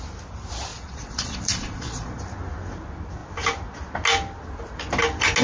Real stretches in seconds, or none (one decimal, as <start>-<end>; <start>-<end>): 0.0-0.7; 2.2-5.4